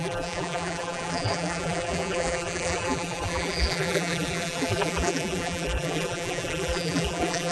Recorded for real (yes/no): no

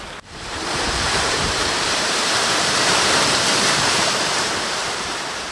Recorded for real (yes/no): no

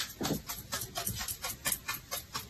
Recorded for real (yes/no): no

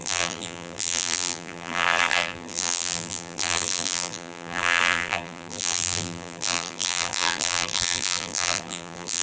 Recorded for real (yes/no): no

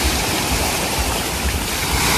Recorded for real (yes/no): no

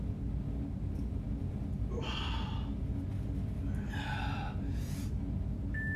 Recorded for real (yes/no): yes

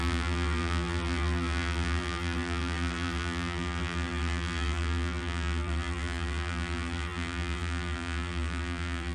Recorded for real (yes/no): no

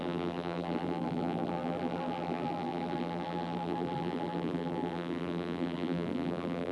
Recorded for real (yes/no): no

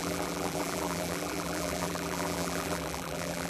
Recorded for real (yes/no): no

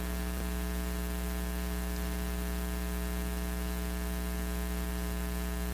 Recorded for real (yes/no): yes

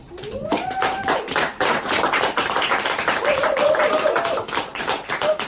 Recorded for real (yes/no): no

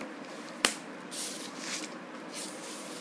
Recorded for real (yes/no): no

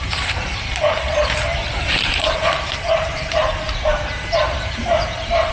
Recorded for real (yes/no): no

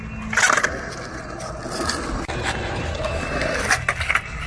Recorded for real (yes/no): yes